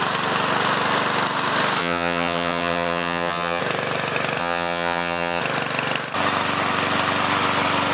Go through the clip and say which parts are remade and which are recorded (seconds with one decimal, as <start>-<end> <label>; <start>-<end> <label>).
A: 0.0-1.8 recorded; 1.8-3.6 remade; 3.6-4.4 recorded; 4.4-5.4 remade; 5.4-7.9 recorded